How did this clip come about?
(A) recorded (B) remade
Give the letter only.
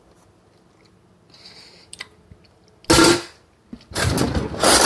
A